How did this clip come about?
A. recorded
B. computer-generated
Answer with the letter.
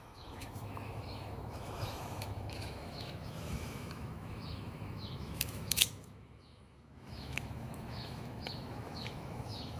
B